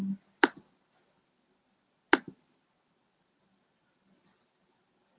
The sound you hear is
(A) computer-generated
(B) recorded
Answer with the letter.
B